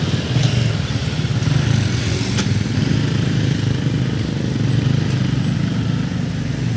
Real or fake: real